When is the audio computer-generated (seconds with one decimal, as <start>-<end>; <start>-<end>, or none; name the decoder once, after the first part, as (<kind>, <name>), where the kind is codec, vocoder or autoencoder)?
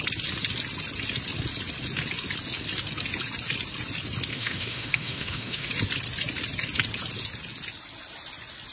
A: 4.3-5.7 (autoencoder, DAC-VAE)